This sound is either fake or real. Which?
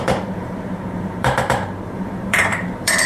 fake